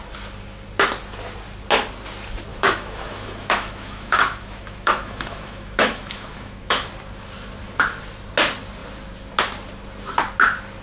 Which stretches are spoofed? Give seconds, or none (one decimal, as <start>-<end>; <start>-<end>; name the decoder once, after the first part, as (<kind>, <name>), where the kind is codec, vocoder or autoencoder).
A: 2.5-6.9 (autoencoder, DAC-VAE)